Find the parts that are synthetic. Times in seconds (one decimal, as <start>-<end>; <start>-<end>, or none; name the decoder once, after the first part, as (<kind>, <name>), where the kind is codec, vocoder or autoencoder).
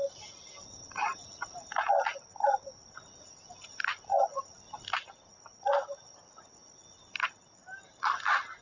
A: none